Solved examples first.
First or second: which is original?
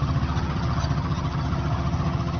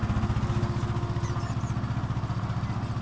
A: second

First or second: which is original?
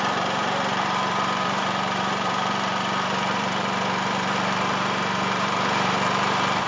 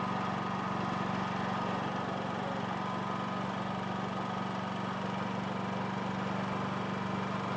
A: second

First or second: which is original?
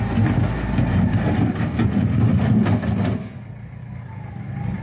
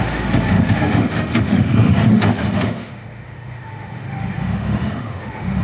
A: first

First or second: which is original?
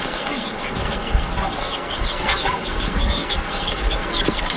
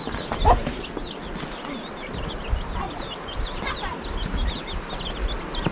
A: second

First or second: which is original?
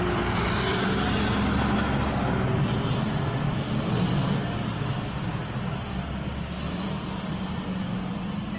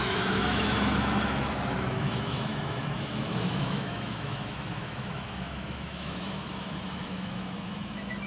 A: first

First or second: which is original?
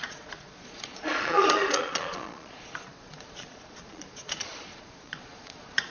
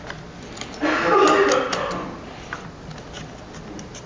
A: second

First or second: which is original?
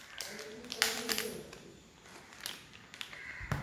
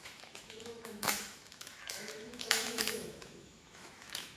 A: first